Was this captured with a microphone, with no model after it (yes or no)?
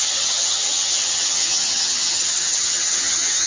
no